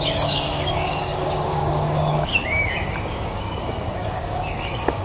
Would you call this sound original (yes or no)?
no